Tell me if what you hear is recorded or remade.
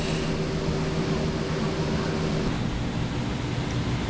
recorded